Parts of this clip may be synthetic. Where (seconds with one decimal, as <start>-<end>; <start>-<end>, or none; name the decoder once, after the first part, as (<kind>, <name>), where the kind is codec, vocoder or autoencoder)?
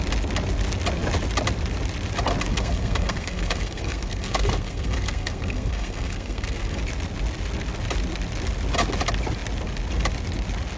2.5-6.8 (codec, SNAC)